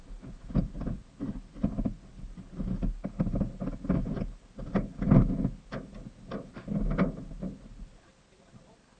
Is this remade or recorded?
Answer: recorded